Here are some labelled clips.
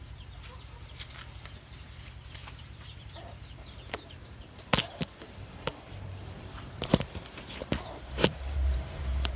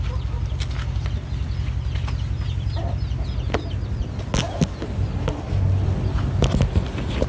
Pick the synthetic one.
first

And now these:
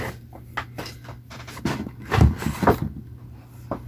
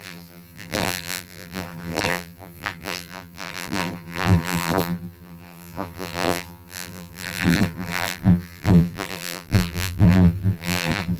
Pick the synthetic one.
second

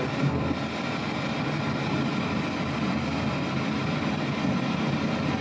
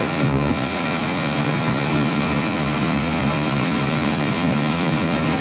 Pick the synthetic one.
second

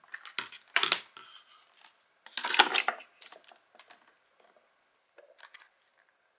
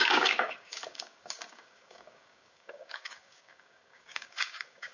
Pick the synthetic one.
second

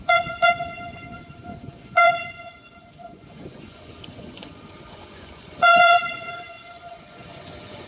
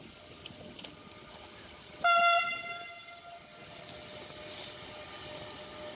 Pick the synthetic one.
first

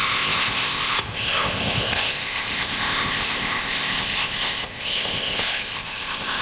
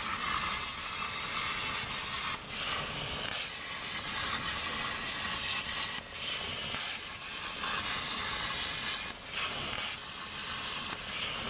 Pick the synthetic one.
first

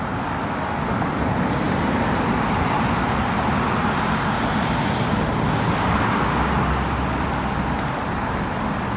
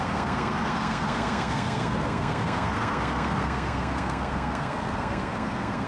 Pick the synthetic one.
second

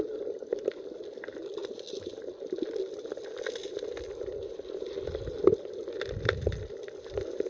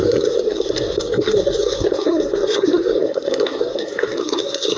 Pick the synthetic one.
second